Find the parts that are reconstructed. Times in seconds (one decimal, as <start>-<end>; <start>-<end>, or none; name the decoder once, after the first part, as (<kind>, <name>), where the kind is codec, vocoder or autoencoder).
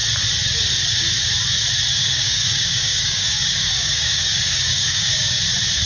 1.9-5.4 (codec, DAC)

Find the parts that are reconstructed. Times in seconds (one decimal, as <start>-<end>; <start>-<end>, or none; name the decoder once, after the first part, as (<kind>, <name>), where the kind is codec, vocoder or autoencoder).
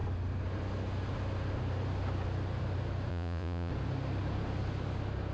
3.1-3.7 (vocoder, Vocos)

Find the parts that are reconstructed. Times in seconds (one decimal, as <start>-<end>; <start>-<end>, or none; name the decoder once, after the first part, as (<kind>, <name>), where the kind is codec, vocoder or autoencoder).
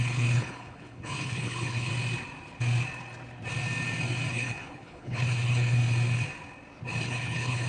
0.0-1.9 (codec, HILCodec); 4.3-5.8; 7.0-7.7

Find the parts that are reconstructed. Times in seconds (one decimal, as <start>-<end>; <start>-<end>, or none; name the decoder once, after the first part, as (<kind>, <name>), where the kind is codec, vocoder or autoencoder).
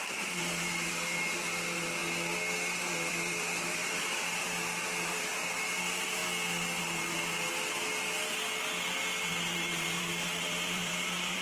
0.0-2.0 (vocoder, BigVGAN v2); 3.1-6.2; 9.3-11.4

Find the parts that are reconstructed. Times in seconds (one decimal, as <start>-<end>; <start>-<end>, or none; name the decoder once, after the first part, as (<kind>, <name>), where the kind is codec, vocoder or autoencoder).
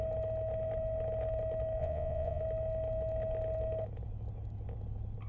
1.8-2.4 (vocoder, Vocos)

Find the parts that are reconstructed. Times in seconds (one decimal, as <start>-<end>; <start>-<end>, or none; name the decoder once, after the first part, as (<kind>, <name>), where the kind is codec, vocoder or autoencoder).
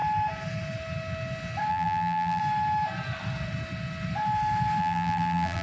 1.7-2.4 (vocoder, BigVGAN v2); 4.8-5.6